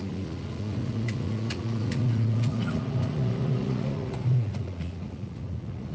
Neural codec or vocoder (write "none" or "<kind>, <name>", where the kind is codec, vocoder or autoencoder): vocoder, Vocos